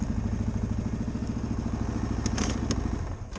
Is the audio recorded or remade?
recorded